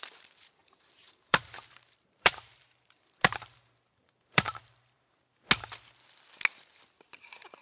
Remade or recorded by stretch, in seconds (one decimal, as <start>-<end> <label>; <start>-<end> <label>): 0.0-0.6 recorded; 0.6-5.2 remade; 5.2-7.6 recorded